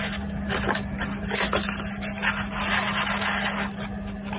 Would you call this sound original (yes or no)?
yes